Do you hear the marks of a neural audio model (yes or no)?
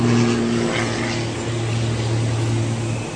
no